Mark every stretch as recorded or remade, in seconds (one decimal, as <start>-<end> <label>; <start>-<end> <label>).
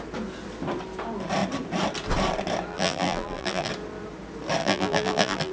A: 0.0-2.7 recorded; 2.7-3.7 remade; 3.7-4.6 recorded; 4.6-5.5 remade